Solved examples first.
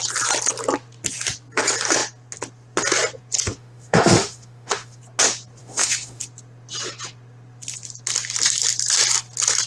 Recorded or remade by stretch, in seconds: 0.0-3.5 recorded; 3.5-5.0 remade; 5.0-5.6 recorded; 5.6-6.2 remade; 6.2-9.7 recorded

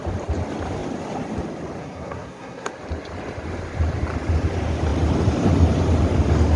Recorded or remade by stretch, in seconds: 0.0-1.8 recorded; 1.8-2.7 remade; 2.7-6.6 recorded